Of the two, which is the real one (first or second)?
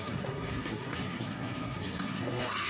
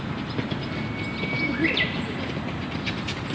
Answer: second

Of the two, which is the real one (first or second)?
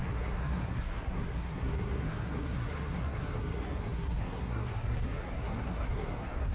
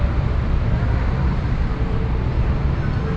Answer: second